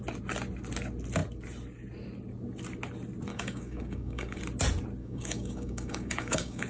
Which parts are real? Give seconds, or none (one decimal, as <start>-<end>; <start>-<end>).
0.0-3.3; 4.4-5.0